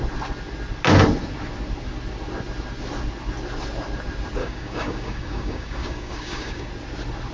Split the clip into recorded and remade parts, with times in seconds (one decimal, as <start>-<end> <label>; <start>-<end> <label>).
0.0-4.4 recorded; 4.4-6.7 remade; 6.7-7.3 recorded

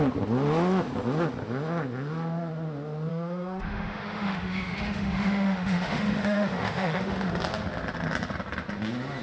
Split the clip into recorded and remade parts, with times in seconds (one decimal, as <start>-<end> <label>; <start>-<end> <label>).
0.0-3.1 recorded; 3.1-7.3 remade; 7.3-9.2 recorded

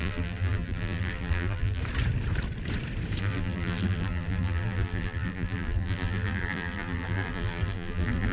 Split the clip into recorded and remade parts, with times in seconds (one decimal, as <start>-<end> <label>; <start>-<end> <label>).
0.0-1.8 remade; 1.8-3.2 recorded; 3.2-8.3 remade